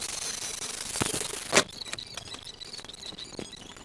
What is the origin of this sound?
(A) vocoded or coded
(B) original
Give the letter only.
B